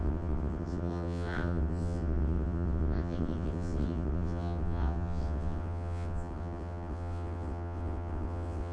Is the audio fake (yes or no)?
yes